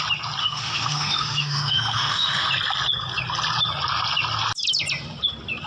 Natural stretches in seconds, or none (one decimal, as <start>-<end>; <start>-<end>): 0.0-0.4; 2.5-5.7